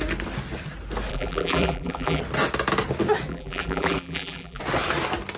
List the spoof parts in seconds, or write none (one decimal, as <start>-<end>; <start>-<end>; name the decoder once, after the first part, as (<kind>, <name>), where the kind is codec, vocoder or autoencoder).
1.1-2.2 (vocoder, BigVGAN v2); 3.3-4.6